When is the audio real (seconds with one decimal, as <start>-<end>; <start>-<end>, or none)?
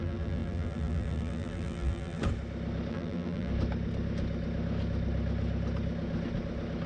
2.2-2.9; 3.5-6.9